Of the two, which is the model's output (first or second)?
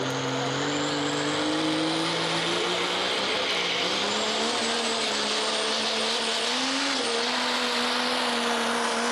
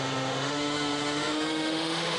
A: second